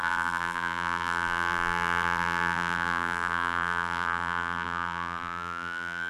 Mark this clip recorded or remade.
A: remade